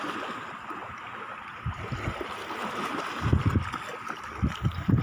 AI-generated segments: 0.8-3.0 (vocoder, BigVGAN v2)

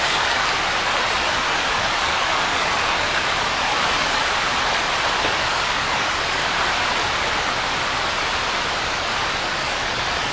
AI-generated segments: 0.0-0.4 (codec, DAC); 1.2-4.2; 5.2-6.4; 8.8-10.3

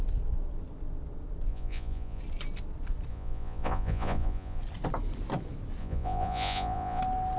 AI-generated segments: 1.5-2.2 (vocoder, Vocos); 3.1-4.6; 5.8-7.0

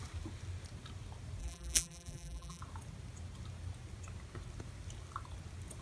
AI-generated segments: 1.4-2.6 (vocoder, BigVGAN v2)

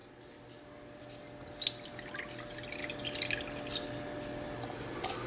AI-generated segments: none